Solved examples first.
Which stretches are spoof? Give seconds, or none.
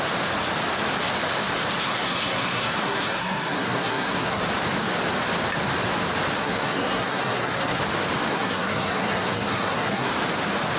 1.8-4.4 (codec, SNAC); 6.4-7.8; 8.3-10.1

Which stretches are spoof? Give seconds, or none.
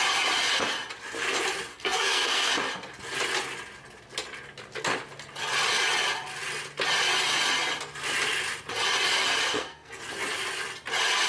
1.7-2.5 (codec, SNAC); 9.5-10.0